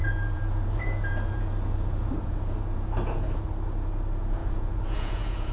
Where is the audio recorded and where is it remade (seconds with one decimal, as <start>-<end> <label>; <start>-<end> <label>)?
0.0-3.3 remade; 3.3-4.4 recorded; 4.4-5.5 remade